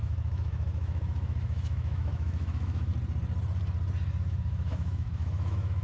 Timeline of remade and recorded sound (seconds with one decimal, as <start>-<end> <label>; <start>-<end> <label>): 0.0-2.9 remade; 2.9-4.2 recorded; 4.2-5.8 remade